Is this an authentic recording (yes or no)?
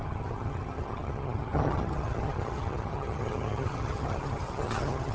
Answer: no